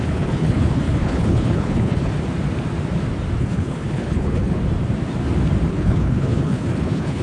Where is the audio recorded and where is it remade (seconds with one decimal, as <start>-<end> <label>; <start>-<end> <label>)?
0.0-2.1 remade; 2.1-3.4 recorded; 3.4-4.6 remade; 4.6-5.7 recorded; 5.7-7.2 remade